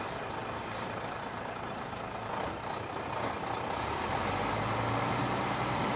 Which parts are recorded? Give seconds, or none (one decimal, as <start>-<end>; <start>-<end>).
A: 0.0-6.0